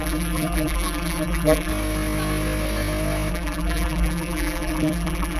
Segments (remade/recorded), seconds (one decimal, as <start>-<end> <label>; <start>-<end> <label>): 0.0-1.7 remade; 1.7-3.3 recorded; 3.3-5.4 remade